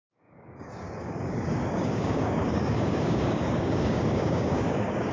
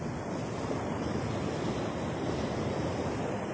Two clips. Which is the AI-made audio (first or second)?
first